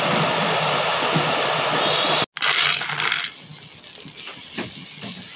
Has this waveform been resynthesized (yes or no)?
no